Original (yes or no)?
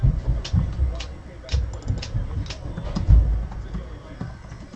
yes